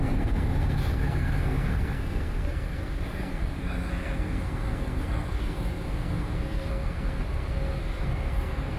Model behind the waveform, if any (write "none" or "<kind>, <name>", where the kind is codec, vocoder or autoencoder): codec, SNAC